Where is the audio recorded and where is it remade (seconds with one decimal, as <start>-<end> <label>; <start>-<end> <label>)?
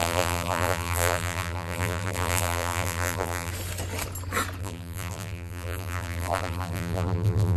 0.0-3.5 remade; 3.5-4.6 recorded; 4.6-7.6 remade